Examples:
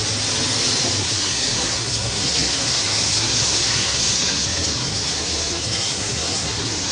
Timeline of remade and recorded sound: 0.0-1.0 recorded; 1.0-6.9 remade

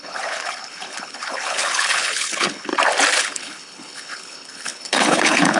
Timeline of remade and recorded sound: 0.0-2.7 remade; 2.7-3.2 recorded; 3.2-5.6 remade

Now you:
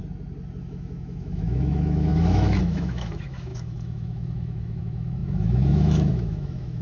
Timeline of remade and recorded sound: 0.0-0.6 recorded; 0.6-6.8 remade

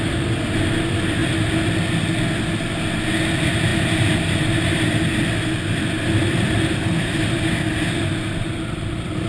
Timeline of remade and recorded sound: 0.0-9.3 recorded

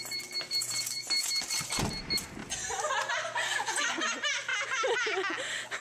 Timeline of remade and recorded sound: 0.0-5.8 recorded

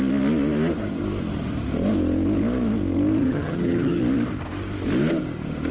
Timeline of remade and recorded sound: 0.0-3.2 recorded; 3.2-4.0 remade; 4.0-5.7 recorded